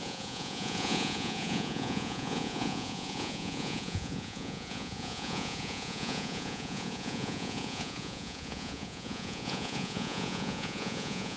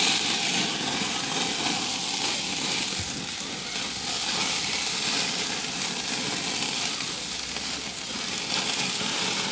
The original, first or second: second